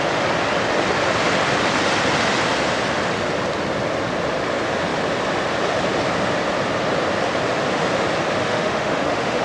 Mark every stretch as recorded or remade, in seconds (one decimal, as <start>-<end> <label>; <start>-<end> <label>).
0.0-8.4 recorded; 8.4-9.4 remade